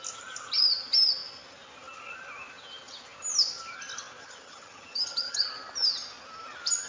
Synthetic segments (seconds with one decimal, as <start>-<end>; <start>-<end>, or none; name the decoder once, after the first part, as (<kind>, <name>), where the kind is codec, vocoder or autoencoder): 4.2-5.4 (vocoder, HiFi-GAN)